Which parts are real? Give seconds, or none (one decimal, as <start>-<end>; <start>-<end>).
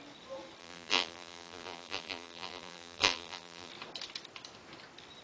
0.0-0.6; 3.7-5.2